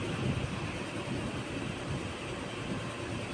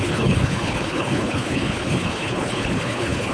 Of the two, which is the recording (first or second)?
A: first